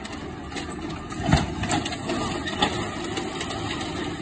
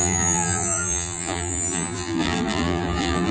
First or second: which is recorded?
first